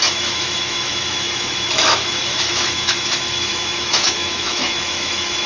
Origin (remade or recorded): remade